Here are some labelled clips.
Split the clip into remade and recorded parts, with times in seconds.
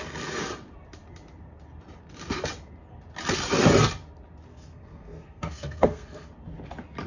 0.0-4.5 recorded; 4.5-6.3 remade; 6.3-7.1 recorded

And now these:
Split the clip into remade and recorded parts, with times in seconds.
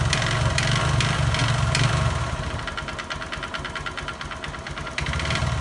0.0-5.6 recorded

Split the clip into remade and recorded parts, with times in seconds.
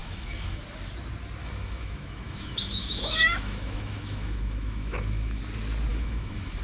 0.0-0.6 remade; 0.6-1.4 recorded; 1.4-5.4 remade; 5.4-5.9 recorded; 5.9-6.6 remade